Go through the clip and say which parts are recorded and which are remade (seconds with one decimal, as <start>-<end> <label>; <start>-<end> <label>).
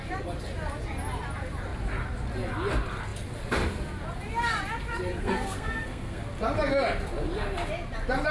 0.0-5.2 recorded; 5.2-6.2 remade; 6.2-8.3 recorded